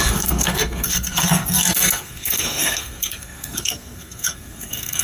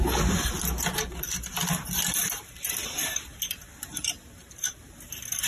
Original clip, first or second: second